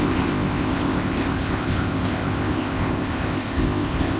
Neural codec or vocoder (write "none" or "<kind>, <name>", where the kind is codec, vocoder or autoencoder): codec, ZipCodec